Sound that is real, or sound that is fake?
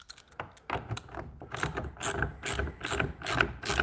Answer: real